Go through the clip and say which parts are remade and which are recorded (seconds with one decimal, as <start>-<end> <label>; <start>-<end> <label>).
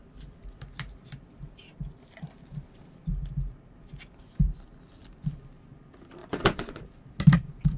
0.0-6.2 recorded; 6.2-6.8 remade; 6.8-7.8 recorded